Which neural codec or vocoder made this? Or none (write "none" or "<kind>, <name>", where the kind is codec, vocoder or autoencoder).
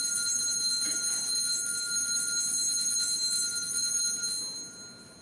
none